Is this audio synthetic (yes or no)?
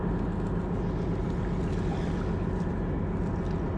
no